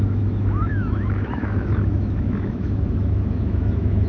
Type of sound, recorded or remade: remade